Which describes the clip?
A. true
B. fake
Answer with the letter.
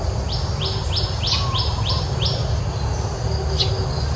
A